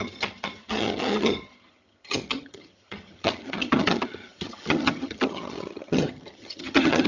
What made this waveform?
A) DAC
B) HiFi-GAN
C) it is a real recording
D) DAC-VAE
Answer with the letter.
B